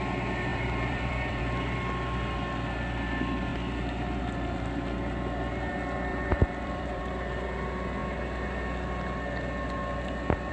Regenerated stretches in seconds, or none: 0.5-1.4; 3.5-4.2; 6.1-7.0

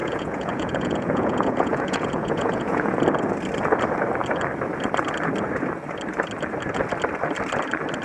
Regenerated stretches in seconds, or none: 0.0-3.0

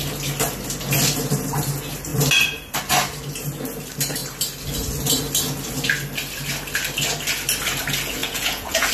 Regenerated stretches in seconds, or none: 8.2-8.9

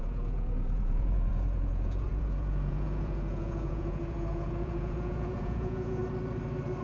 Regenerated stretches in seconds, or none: 0.0-6.0

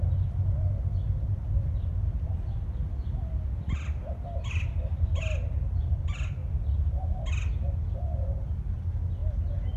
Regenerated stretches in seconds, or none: none